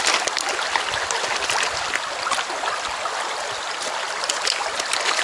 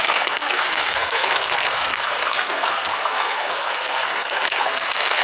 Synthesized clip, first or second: second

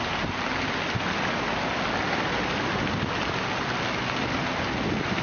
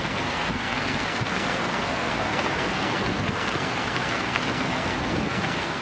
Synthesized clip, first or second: second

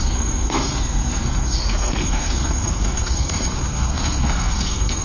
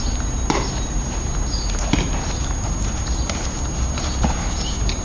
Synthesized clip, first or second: first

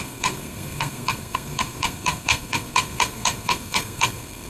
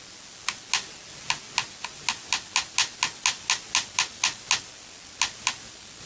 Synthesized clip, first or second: first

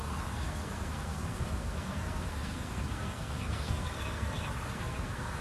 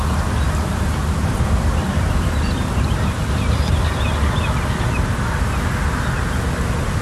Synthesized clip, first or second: first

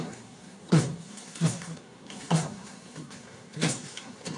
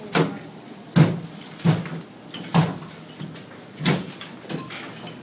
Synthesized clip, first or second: first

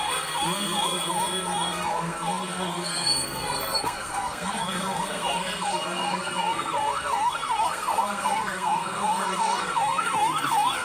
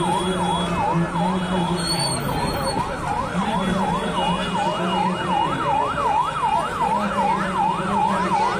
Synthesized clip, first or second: first